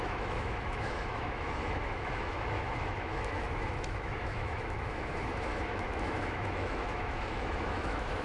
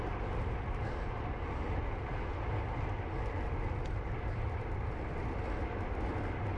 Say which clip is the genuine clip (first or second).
second